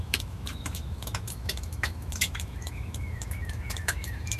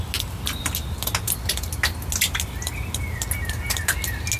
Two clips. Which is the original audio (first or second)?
second